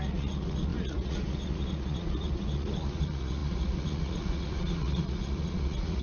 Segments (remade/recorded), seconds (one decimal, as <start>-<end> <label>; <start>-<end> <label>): 0.0-6.0 remade